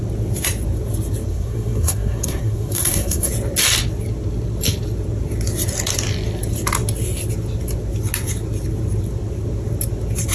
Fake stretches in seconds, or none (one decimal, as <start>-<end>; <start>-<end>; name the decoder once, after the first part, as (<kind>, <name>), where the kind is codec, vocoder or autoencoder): 1.3-3.3 (codec, SNAC)